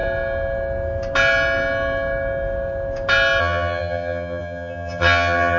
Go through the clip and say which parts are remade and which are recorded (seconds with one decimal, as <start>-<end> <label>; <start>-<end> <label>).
0.0-3.4 recorded; 3.4-5.6 remade